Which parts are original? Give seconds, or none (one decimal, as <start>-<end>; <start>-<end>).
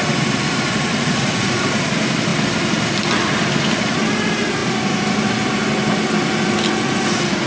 0.0-0.9; 1.6-7.5